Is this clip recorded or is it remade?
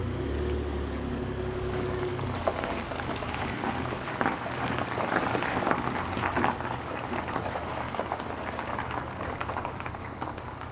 remade